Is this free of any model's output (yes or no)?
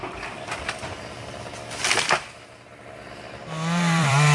no